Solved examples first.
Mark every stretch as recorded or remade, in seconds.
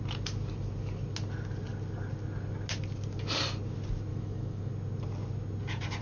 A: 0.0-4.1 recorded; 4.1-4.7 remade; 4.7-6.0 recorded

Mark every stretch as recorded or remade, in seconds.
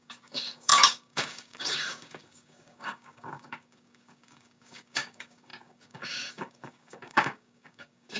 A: 0.0-8.2 remade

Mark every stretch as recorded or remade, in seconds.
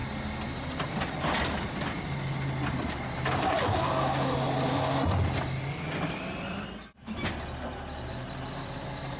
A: 0.0-9.2 recorded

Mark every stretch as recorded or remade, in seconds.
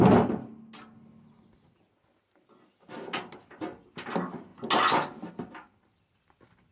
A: 0.0-6.7 recorded